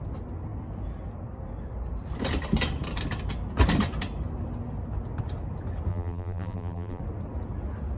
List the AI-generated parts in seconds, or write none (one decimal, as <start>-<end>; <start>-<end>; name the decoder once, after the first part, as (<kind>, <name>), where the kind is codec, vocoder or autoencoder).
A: 5.9-7.0 (vocoder, BigVGAN v2)